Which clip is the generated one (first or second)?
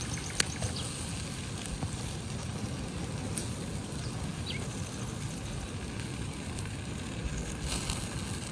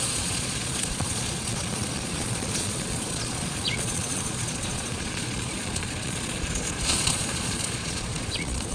second